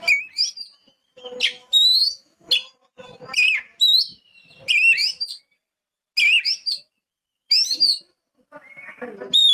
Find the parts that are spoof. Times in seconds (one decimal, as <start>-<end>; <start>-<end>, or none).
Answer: 1.6-2.5